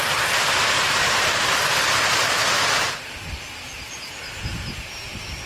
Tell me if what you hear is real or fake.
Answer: real